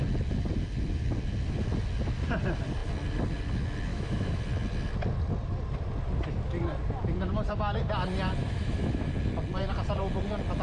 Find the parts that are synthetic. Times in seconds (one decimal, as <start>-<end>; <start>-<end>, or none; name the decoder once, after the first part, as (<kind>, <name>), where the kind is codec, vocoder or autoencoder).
3.9-4.4 (autoencoder, DAC-VAE); 8.4-9.1